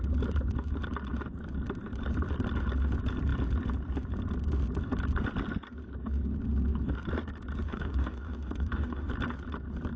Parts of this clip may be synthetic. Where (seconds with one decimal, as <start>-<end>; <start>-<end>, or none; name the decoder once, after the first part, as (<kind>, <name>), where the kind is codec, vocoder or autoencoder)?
7.7-9.1 (autoencoder, DAC-VAE)